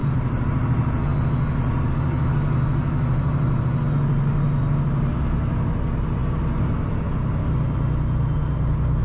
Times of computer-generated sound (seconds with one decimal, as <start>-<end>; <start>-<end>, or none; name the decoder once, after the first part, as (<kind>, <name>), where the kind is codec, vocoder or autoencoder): 0.0-0.5 (vocoder, BigVGAN v2)